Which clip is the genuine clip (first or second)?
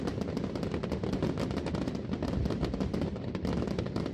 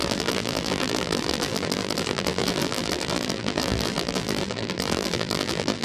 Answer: first